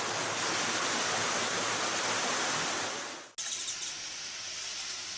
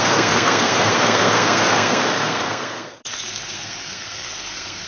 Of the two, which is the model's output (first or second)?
second